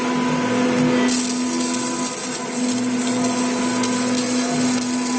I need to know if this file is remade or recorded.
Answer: recorded